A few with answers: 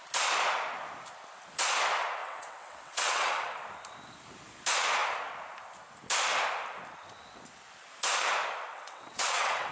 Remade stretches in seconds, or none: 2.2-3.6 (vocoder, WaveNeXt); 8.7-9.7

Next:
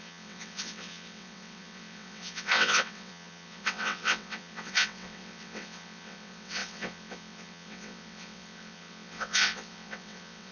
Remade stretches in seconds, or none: 0.0-10.5 (vocoder, WaveNeXt)